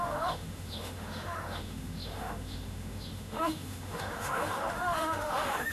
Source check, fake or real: fake